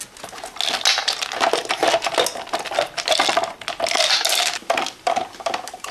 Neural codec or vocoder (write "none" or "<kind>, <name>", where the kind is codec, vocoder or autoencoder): none